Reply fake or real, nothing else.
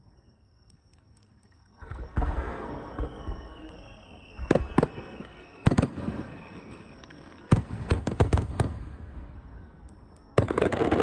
fake